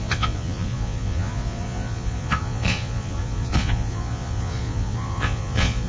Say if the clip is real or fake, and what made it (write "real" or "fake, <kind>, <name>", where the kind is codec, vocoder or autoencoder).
fake, vocoder, Vocos